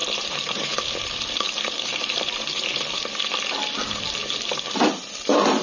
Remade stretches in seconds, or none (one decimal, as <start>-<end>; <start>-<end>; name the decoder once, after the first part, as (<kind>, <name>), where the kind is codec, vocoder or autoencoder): 0.0-2.8 (vocoder, BigVGAN v2)